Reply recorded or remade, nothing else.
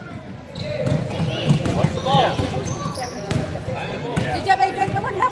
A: remade